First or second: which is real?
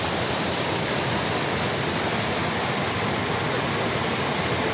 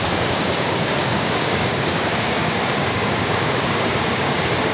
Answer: first